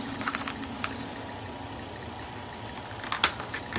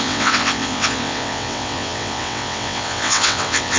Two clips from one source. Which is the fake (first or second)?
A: second